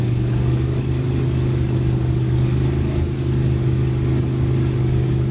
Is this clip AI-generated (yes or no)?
yes